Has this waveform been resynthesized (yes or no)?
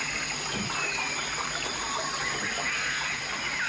no